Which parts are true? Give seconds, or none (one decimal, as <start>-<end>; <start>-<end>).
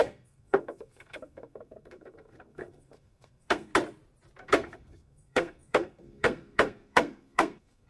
3.7-4.4